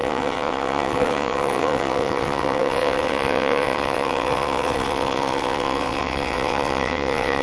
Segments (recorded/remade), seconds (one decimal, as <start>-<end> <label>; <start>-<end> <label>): 0.0-7.4 remade